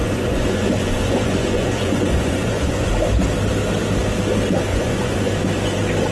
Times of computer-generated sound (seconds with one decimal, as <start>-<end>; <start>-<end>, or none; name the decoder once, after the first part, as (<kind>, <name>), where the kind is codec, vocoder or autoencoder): 0.0-2.9 (vocoder, Vocos); 4.7-5.3